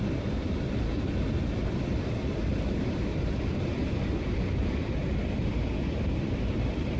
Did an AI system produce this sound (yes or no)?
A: yes